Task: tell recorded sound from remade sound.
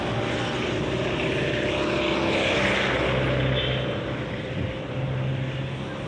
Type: recorded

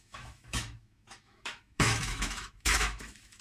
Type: remade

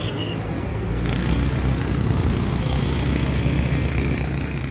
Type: remade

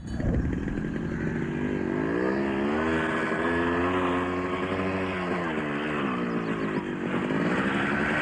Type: recorded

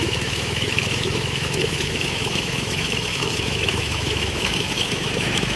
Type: remade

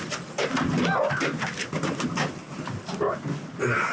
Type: recorded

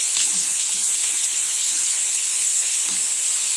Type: remade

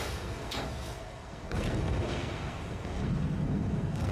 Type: remade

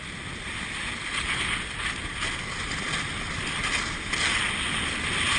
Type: recorded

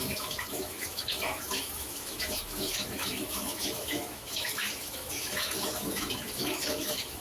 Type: remade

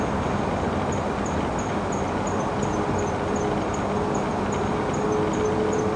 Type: recorded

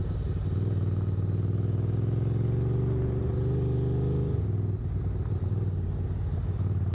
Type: recorded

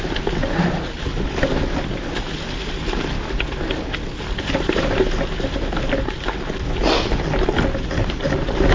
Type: recorded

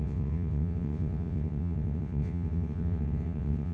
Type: remade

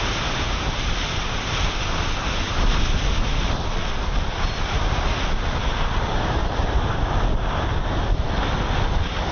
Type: recorded